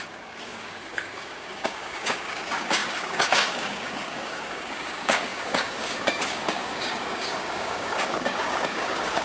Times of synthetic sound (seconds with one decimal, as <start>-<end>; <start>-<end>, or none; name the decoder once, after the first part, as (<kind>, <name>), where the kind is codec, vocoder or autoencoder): 0.0-9.2 (codec, DAC)